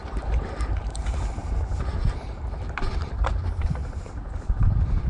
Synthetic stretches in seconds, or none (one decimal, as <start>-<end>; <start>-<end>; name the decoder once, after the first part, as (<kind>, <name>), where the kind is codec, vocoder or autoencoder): none